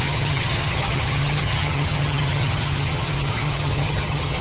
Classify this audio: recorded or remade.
remade